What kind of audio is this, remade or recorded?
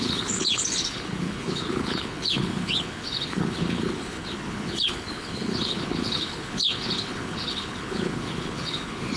remade